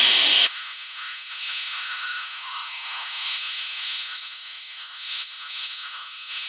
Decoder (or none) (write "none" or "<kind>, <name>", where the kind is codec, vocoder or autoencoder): autoencoder, DAC-VAE